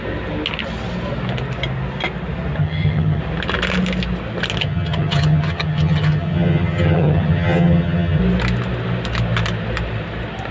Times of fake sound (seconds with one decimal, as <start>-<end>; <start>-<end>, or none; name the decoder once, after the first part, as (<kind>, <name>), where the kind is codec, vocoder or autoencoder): 2.6-3.2 (vocoder, HiFi-GAN); 4.6-8.2